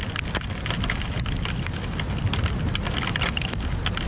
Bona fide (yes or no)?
yes